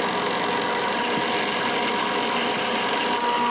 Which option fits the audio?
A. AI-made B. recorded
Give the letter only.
B